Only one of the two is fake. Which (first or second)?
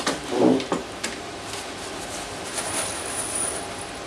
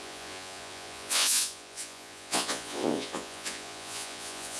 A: second